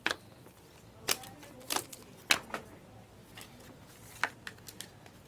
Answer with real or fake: real